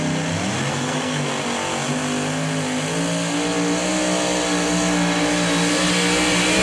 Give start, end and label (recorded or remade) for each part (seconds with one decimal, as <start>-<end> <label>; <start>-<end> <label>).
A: 0.0-0.7 recorded; 0.7-1.3 remade; 1.3-6.6 recorded